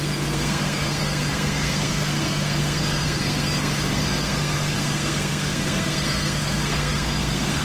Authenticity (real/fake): fake